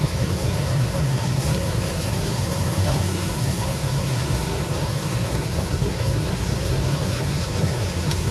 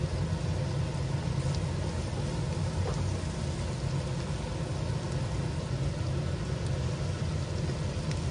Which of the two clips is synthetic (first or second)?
first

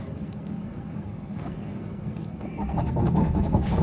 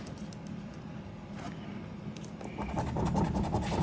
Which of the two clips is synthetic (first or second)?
first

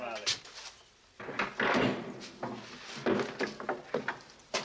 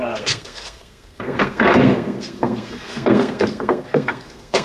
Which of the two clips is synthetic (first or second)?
second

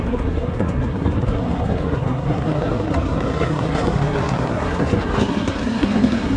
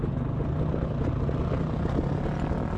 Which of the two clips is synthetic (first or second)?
first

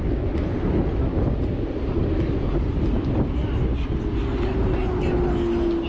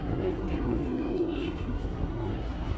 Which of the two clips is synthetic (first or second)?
second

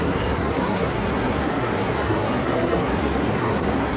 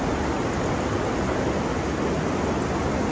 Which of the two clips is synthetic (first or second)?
first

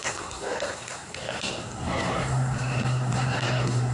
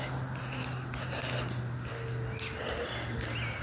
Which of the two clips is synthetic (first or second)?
first